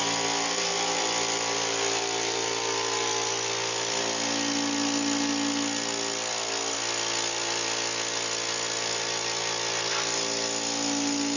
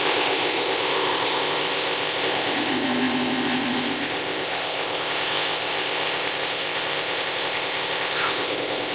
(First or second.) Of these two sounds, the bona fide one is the first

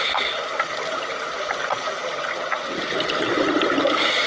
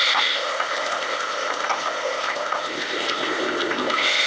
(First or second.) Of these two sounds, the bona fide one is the first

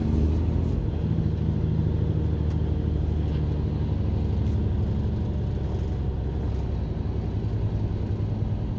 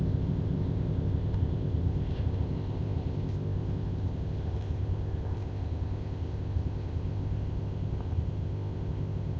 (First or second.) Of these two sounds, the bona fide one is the first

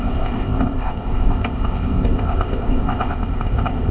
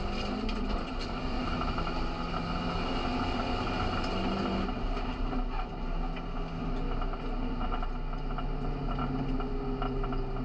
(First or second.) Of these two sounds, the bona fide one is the second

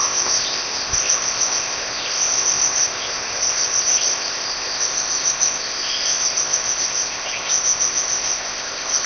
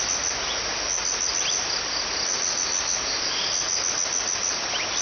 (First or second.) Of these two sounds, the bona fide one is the second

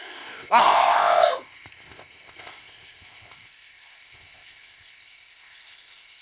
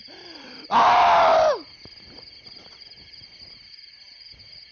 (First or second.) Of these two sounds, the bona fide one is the second